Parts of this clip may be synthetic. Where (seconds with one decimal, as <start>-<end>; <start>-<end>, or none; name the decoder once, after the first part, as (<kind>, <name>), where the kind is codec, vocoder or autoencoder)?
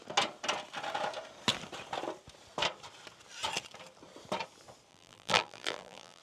4.9-6.2 (vocoder, BigVGAN v2)